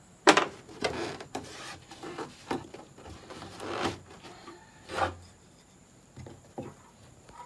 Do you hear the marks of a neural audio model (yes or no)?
yes